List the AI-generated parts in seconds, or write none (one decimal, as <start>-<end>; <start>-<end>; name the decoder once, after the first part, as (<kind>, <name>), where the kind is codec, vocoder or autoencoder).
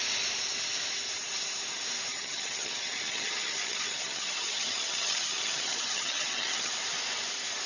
2.1-6.7 (vocoder, HiFi-GAN)